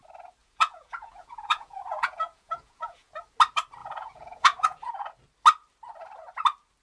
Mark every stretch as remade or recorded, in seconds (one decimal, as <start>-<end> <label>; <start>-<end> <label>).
0.0-0.4 recorded; 0.4-3.1 remade; 3.1-3.8 recorded; 3.8-5.1 remade; 5.1-6.8 recorded